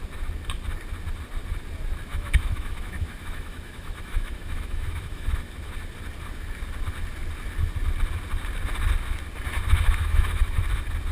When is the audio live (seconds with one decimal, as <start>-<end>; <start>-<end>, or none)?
0.0-2.1; 5.7-9.9; 10.6-11.1